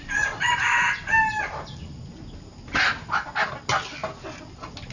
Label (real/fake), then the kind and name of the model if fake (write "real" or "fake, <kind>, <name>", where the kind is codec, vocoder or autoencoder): real